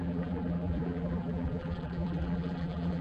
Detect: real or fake fake